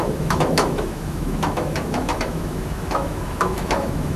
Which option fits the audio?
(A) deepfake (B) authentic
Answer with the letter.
A